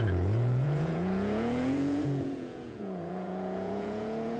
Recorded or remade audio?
remade